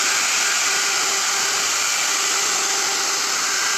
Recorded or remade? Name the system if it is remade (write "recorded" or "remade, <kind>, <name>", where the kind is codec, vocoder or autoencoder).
recorded